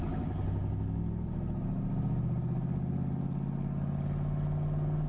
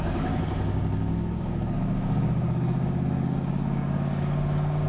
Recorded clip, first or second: first